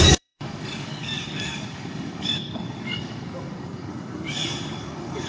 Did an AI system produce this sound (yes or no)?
yes